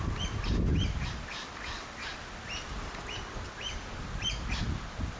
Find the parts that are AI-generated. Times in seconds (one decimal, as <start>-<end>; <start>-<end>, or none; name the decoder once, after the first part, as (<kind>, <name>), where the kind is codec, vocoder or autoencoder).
none

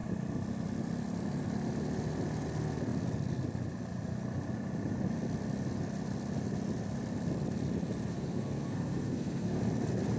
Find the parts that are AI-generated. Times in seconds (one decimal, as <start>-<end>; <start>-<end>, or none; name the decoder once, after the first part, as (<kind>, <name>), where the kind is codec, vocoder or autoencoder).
8.1-9.6 (codec, SNAC)

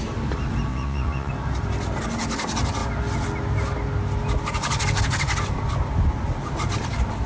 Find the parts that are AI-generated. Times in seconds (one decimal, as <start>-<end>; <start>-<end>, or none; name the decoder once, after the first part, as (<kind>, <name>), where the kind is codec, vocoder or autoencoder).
0.7-1.3 (vocoder, Vocos)

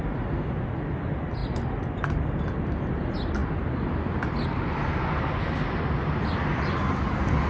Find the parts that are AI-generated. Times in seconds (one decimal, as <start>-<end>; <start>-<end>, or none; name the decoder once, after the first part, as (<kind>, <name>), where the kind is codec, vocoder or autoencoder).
none

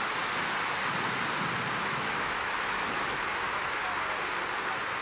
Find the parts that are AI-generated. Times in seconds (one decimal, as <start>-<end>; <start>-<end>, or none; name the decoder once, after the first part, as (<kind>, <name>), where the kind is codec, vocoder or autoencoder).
1.8-3.8 (autoencoder, DAC-VAE)